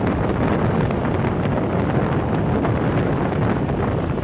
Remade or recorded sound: recorded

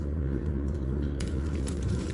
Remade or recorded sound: remade